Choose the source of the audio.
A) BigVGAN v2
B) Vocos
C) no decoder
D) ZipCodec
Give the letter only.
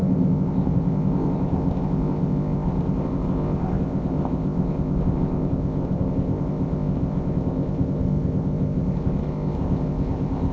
D